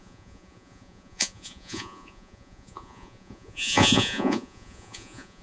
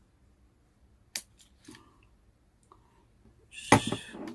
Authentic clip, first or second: second